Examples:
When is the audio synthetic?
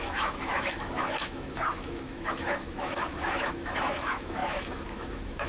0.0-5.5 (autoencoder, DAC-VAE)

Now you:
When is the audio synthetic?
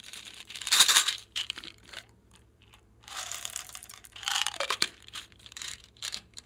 0.0-6.5 (vocoder, BigVGAN v2)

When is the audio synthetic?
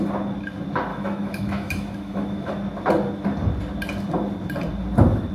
0.9-2.5 (autoencoder, DAC-VAE)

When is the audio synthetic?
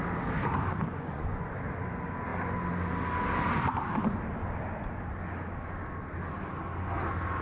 0.9-1.5 (vocoder, Vocos)